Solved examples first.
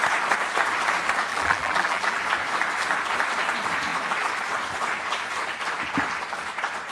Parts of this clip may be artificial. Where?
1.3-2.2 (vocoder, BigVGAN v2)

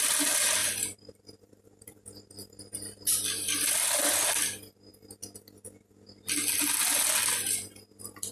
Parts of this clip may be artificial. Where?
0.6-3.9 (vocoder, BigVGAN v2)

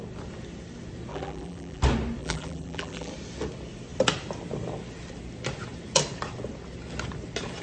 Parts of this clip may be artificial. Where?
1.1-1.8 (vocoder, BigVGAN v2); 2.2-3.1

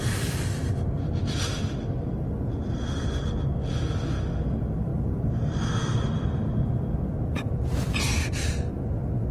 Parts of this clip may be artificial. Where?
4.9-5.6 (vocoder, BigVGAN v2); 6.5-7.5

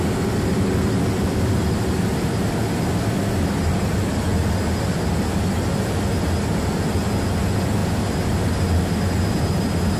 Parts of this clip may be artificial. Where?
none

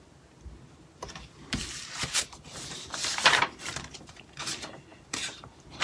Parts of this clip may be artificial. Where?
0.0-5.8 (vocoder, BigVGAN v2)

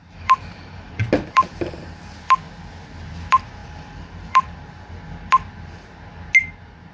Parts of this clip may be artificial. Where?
0.0-2.0 (vocoder, BigVGAN v2); 3.6-4.9

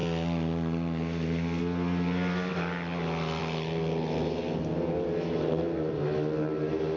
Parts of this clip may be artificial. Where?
none